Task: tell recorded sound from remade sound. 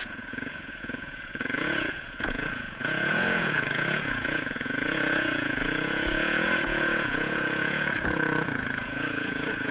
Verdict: remade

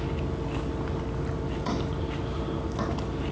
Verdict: recorded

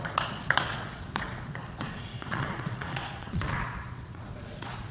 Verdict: remade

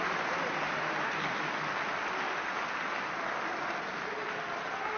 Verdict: recorded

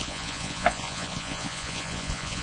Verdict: remade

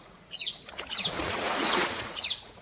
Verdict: remade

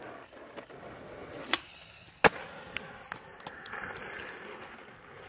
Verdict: recorded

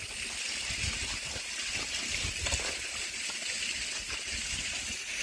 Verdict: recorded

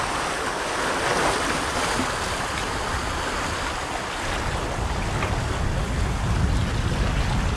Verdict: recorded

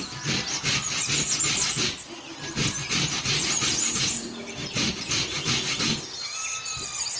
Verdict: recorded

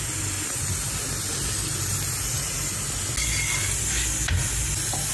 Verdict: recorded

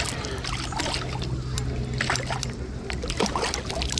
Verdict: recorded